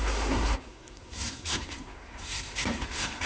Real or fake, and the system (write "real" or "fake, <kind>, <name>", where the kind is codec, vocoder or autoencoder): fake, codec, SNAC